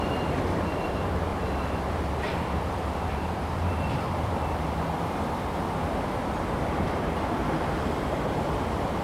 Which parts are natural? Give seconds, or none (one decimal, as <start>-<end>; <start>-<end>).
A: 1.3-1.9; 5.8-6.7